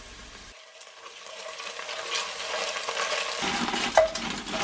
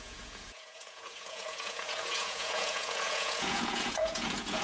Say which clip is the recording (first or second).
first